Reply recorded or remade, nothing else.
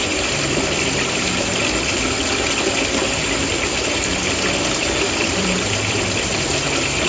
remade